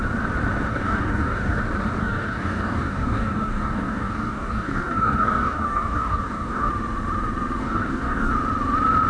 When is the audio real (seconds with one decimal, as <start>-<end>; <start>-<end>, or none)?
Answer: 0.0-0.7; 1.6-2.0; 6.7-7.6; 8.3-9.1